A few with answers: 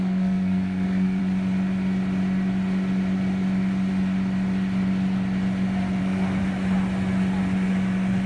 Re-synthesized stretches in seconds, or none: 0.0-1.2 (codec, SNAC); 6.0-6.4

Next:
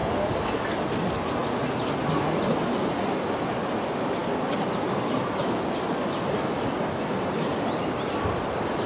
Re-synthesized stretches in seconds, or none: none

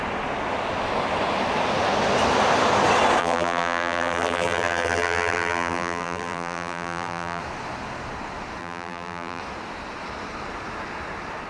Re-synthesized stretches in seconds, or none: 3.2-7.4 (vocoder, BigVGAN v2); 8.6-9.4

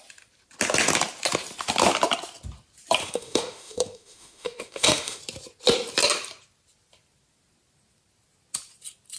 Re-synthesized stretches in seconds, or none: 3.0-5.2 (autoencoder, DAC-VAE)

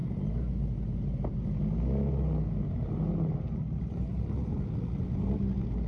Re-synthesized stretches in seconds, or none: none